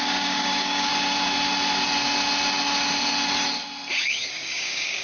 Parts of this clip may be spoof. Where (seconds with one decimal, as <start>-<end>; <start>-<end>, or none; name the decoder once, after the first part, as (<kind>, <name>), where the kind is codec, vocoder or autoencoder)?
0.0-0.9 (codec, DAC); 3.9-5.0